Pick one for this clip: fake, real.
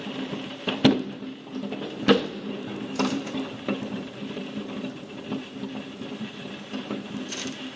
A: fake